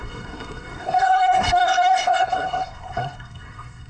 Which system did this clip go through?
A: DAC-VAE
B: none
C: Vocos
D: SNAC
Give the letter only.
D